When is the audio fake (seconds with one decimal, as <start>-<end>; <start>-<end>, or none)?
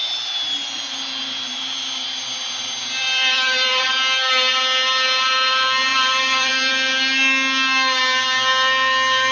1.5-3.9; 5.9-6.7